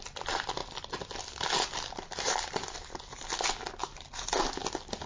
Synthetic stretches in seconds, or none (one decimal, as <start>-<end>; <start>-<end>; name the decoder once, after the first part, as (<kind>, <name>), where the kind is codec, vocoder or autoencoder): none